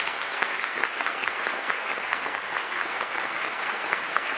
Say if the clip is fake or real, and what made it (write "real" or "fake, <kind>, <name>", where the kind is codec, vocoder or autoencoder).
fake, codec, SNAC